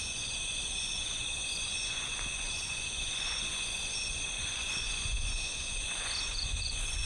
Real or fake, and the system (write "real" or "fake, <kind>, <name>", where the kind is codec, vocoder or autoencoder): fake, vocoder, Vocos